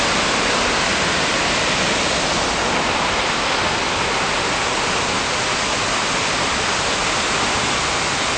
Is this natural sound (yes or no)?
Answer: yes